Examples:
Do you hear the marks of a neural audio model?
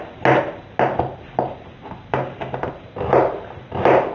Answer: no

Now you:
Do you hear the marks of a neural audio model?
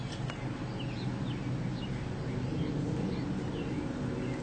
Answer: no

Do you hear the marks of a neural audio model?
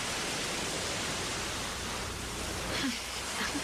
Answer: no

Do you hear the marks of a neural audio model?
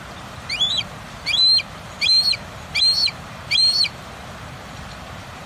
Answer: yes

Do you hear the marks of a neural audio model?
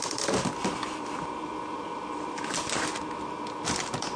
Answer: no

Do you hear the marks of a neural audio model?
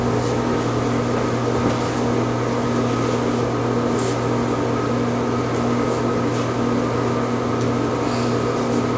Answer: no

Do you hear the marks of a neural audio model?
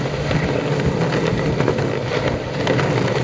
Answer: no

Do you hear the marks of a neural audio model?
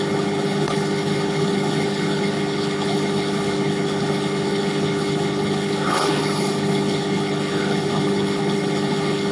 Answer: yes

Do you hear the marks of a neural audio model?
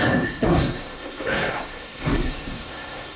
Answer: yes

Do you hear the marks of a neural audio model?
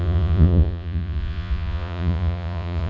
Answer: yes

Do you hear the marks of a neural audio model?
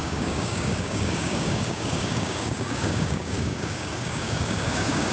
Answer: yes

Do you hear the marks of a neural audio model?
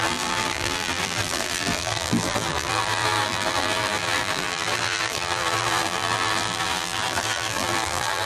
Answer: yes